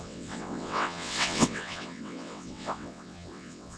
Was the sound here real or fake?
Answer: fake